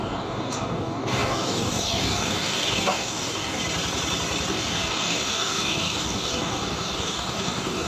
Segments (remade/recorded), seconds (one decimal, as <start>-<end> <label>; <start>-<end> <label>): 0.0-3.6 remade; 3.6-4.5 recorded; 4.5-7.9 remade